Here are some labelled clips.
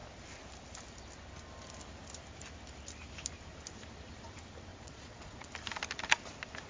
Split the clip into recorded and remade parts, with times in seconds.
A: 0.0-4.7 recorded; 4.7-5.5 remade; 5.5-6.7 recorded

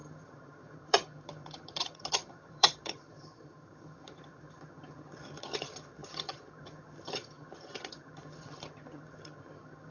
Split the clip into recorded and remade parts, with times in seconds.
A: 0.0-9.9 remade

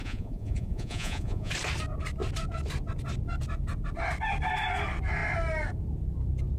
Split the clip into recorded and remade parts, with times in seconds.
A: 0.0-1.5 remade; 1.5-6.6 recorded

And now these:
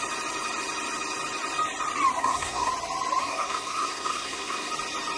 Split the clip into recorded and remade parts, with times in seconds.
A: 0.0-2.2 recorded; 2.2-2.7 remade; 2.7-3.2 recorded; 3.2-4.7 remade; 4.7-5.2 recorded

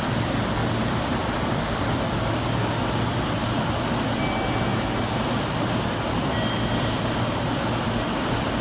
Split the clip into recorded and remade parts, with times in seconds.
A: 0.0-8.6 recorded